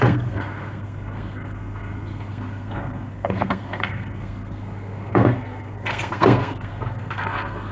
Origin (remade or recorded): remade